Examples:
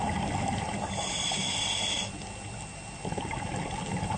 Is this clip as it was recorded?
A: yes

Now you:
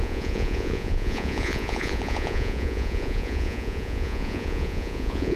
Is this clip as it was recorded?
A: no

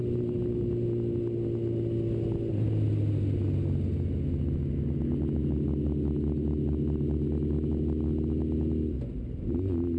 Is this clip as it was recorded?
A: yes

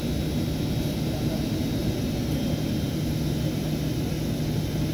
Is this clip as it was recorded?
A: yes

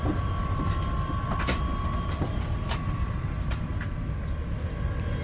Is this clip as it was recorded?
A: yes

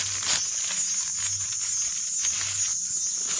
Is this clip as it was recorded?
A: yes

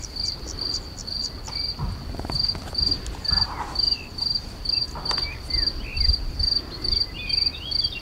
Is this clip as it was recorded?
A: yes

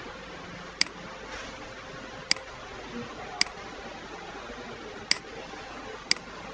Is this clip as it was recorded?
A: yes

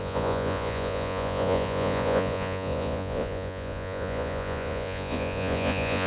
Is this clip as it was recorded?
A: no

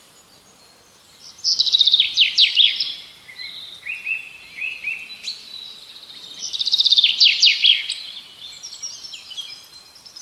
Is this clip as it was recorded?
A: yes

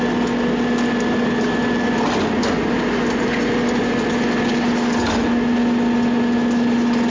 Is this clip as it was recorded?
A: yes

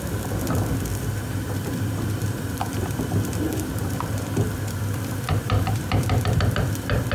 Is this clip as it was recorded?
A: no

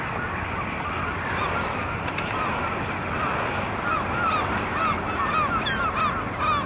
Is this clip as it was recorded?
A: yes